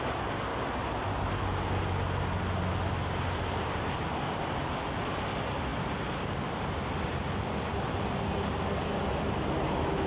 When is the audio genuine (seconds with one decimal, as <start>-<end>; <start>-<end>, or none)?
0.0-10.1